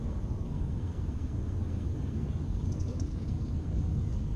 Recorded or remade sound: remade